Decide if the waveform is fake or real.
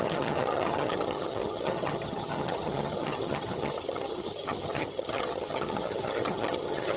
fake